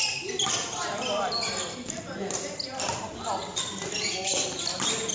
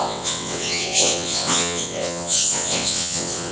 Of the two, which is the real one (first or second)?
first